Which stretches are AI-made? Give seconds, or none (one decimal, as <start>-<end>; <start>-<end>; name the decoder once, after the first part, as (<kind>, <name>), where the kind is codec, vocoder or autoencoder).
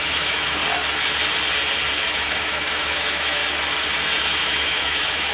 0.0-0.6 (autoencoder, DAC-VAE); 2.1-3.4; 4.2-5.3